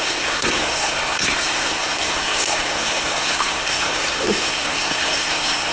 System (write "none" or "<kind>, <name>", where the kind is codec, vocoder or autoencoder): codec, SNAC